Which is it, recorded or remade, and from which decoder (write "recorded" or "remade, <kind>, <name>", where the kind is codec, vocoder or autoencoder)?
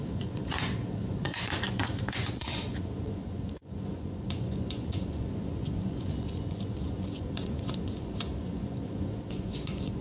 remade, vocoder, Vocos